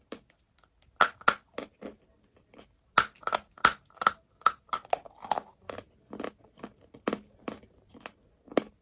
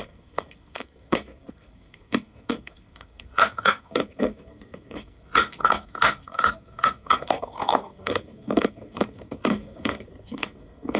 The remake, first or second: second